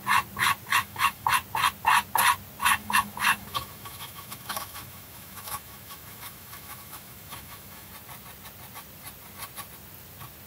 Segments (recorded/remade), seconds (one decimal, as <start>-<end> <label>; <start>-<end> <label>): 0.0-0.8 recorded; 0.8-1.3 remade; 1.3-2.8 recorded; 2.8-7.9 remade; 7.9-10.5 recorded